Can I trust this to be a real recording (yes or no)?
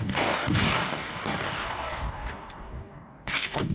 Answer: no